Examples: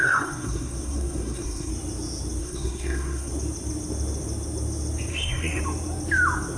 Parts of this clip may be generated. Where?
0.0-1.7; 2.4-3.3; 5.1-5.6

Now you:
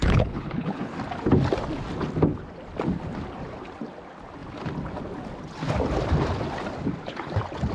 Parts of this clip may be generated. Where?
0.0-0.9

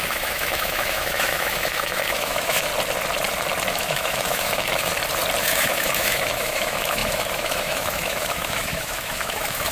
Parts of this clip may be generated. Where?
0.0-2.7; 3.7-4.9; 5.4-9.7

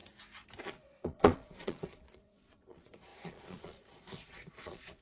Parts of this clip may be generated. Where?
0.6-5.0

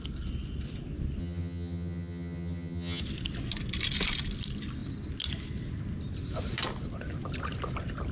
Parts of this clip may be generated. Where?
1.2-3.0

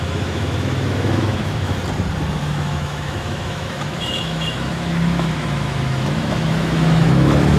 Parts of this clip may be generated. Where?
0.0-1.8; 2.4-7.6

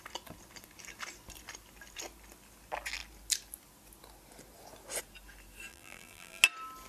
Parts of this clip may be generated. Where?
5.7-6.4

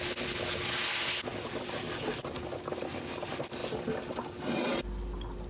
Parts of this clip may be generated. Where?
none